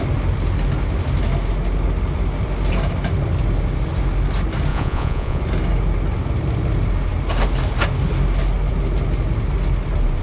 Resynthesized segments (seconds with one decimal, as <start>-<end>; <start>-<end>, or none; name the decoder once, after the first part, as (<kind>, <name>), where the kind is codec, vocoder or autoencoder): 4.7-5.4 (vocoder, Vocos)